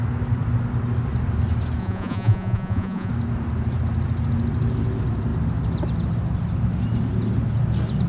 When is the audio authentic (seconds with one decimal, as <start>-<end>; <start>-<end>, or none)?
0.0-1.8; 3.1-8.1